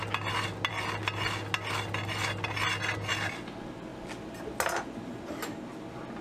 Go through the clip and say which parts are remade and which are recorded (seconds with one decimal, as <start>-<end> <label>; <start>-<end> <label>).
0.0-6.2 recorded